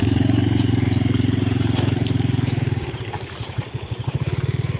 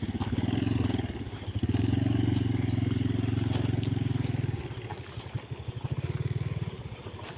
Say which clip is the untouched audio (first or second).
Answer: second